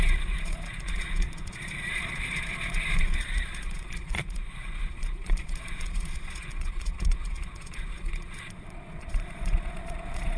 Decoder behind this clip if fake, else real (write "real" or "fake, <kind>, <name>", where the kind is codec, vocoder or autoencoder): fake, vocoder, Vocos